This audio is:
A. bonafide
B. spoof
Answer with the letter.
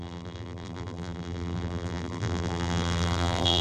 B